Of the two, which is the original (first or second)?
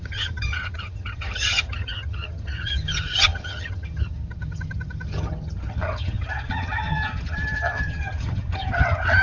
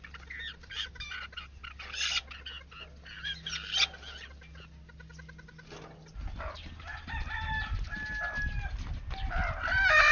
second